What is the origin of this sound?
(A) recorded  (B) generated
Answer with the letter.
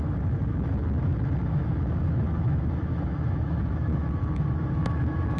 B